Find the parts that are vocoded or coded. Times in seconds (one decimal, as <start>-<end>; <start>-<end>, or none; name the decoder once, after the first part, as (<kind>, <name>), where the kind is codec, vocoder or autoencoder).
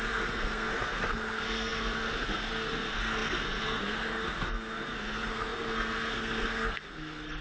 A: 0.0-7.4 (codec, SNAC)